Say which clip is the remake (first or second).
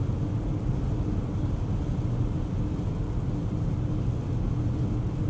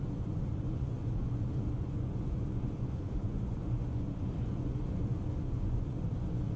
second